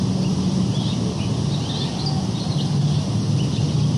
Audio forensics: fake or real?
real